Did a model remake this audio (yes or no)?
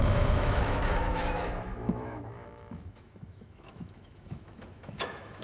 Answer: yes